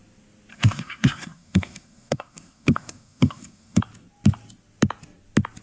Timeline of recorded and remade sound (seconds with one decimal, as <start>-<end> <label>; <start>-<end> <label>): 0.0-0.5 recorded; 0.5-3.8 remade; 3.8-5.6 recorded